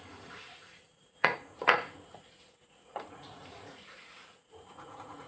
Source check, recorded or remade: remade